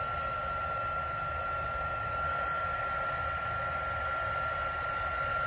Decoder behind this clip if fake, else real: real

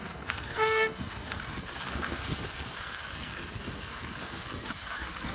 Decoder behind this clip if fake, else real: fake, codec, SNAC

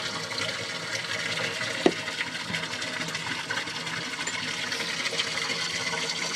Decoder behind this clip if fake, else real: real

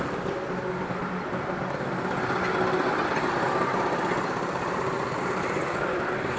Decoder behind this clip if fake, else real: real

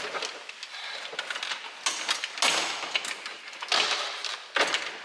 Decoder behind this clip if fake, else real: real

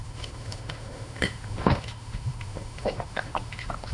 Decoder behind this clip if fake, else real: fake, autoencoder, DAC-VAE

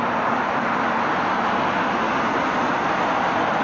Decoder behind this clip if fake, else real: real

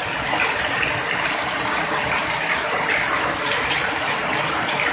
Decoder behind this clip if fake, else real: real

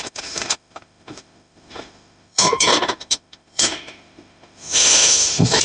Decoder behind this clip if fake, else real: fake, autoencoder, DAC-VAE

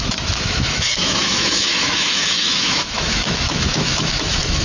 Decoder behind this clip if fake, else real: fake, autoencoder, DAC-VAE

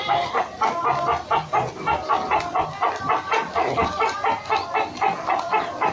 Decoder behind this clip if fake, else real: real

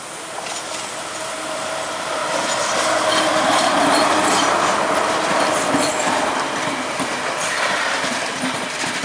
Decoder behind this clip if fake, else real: fake, vocoder, BigVGAN v2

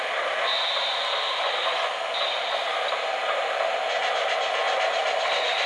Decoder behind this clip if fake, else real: real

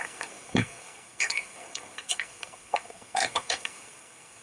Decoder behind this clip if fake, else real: fake, codec, SNAC